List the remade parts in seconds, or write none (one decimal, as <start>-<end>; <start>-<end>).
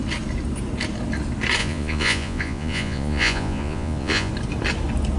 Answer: 1.6-4.3